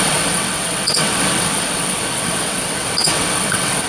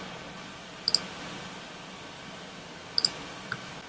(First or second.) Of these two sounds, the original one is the second